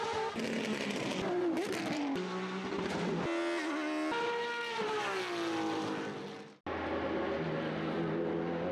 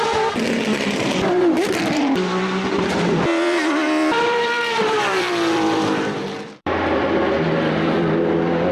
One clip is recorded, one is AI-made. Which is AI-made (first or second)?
second